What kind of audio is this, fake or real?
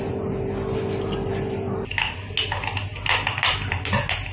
real